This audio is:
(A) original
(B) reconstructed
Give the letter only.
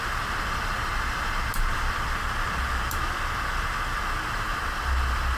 A